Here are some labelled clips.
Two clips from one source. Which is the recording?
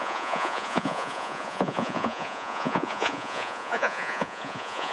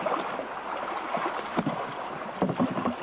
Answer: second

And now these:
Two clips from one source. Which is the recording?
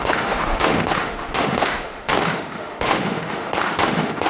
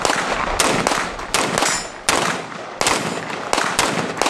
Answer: second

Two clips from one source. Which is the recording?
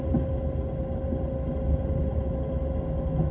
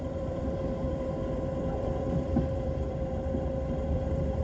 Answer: first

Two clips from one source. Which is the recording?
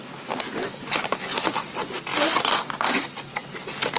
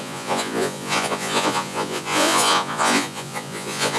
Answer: first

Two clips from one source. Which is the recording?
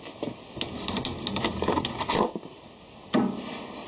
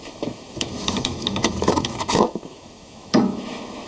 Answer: first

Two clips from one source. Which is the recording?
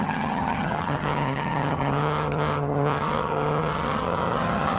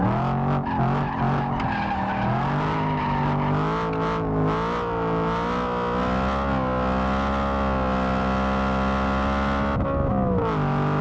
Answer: second